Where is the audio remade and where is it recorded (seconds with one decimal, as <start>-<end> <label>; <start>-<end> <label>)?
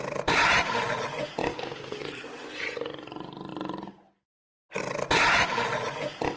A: 0.0-1.4 recorded; 1.4-2.0 remade; 2.0-6.4 recorded